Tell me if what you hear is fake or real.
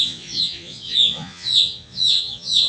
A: fake